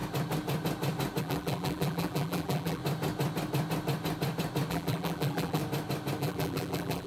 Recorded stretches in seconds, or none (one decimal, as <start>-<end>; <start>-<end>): 0.0-1.2; 2.8-4.7; 5.6-6.2